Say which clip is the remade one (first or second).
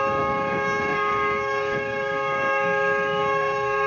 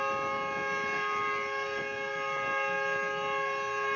first